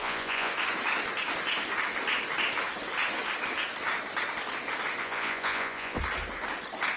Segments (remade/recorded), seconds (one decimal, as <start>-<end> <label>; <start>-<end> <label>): 0.0-0.5 remade; 0.5-5.0 recorded; 5.0-6.0 remade; 6.0-7.0 recorded